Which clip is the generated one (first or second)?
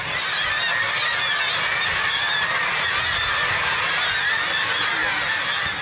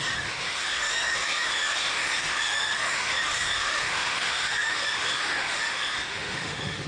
second